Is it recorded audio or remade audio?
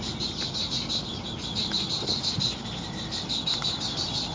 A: recorded